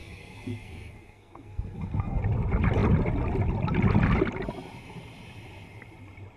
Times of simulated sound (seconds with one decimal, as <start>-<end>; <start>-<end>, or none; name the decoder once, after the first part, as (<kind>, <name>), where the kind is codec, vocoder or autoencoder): 0.0-2.2 (codec, SNAC)